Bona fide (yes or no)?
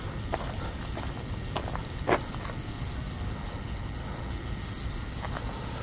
yes